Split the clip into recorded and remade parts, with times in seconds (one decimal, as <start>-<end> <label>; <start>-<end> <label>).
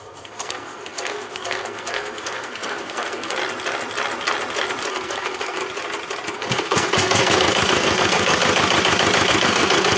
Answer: 0.0-3.4 remade; 3.4-4.9 recorded; 4.9-5.6 remade; 5.6-6.3 recorded; 6.3-8.4 remade; 8.4-9.3 recorded; 9.3-10.0 remade